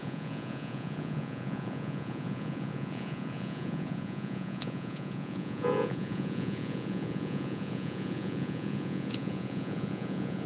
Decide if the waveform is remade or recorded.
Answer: remade